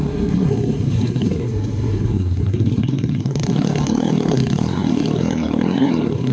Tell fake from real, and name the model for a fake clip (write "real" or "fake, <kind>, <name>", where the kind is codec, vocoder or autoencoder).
fake, codec, SNAC